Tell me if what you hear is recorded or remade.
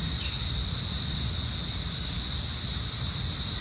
recorded